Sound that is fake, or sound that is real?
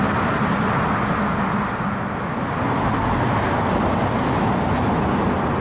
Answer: real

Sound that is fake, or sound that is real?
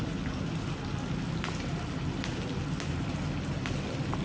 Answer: real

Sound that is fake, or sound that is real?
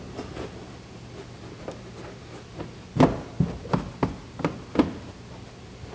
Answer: real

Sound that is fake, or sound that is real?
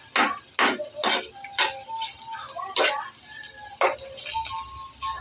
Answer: real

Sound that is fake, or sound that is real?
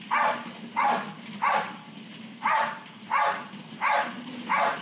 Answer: real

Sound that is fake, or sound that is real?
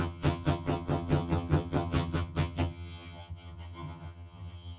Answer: fake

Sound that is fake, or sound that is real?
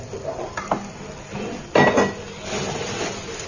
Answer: real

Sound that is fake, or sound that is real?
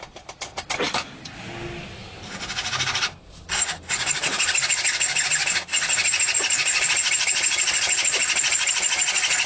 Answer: real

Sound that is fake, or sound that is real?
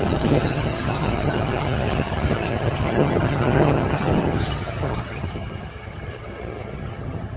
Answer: fake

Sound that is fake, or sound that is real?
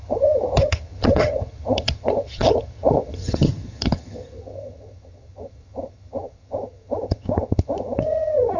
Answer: fake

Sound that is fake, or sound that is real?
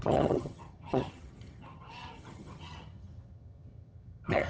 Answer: fake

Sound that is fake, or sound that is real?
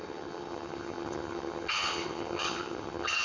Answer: fake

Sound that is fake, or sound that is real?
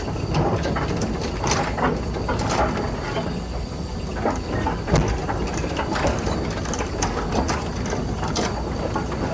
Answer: real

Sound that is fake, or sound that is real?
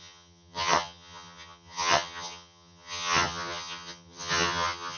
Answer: fake